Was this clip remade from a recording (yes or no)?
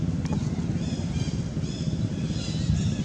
no